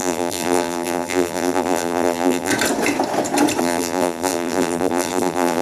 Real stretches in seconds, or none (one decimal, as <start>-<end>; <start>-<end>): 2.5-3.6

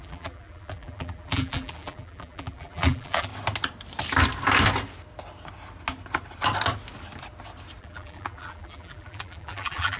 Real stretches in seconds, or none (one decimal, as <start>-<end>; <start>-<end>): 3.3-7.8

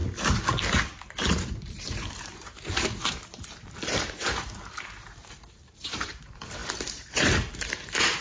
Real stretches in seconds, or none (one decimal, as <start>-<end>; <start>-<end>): 0.0-1.0